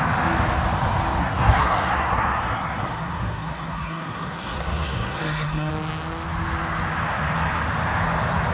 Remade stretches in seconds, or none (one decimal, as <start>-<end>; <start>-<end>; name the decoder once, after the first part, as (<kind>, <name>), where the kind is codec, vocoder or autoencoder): 1.2-5.7 (codec, SNAC)